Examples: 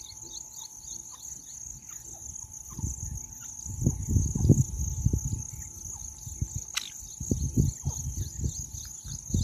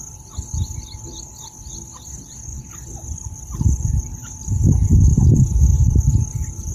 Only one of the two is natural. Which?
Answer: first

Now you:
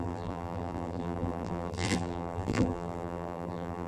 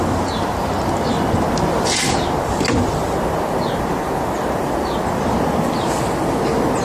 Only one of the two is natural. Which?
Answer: second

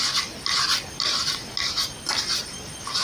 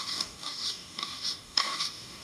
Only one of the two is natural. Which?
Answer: first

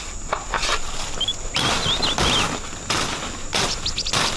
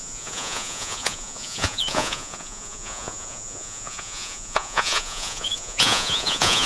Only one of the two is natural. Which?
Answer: first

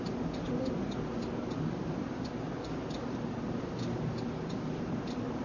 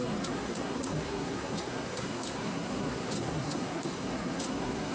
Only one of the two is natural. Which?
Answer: first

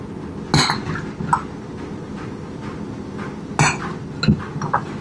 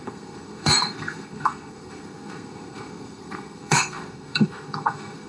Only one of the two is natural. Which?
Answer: first